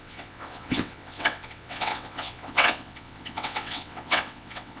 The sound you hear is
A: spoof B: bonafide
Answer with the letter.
A